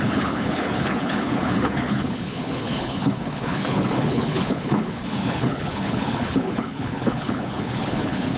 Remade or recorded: remade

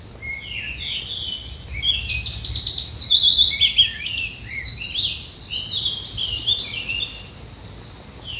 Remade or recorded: recorded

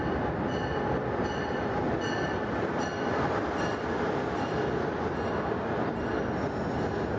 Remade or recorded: recorded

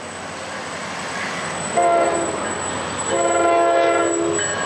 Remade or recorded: recorded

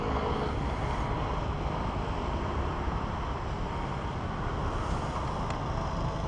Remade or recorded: recorded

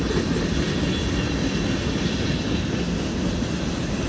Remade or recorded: recorded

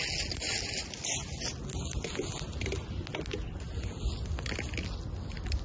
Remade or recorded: recorded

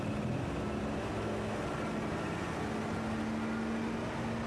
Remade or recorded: recorded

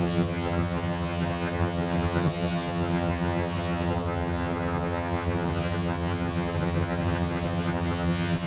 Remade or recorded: remade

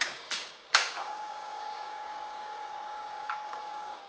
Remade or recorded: remade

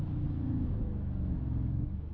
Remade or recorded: remade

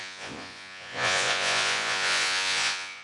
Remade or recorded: remade